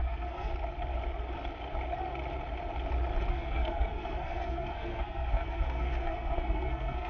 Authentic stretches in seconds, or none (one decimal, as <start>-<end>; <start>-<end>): 0.5-3.3